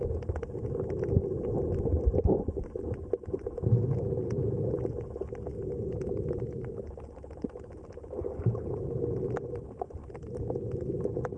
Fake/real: real